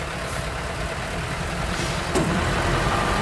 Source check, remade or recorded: remade